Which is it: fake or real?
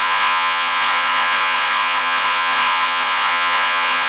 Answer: fake